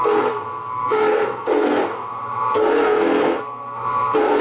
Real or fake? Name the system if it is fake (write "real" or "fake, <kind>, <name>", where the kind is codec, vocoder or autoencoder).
fake, codec, SNAC